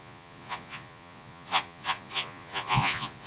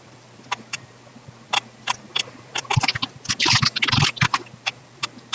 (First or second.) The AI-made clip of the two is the first